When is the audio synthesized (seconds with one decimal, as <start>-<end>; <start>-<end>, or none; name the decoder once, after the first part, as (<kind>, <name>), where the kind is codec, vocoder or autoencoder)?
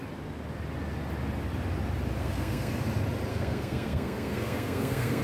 2.2-2.7 (codec, SNAC); 3.3-5.2